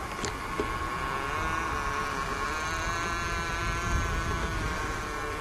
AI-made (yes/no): no